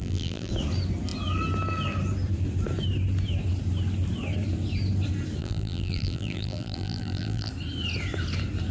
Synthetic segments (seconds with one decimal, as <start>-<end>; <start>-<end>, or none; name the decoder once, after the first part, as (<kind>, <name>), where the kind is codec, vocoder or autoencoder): 0.0-0.5 (vocoder, BigVGAN v2); 5.4-7.5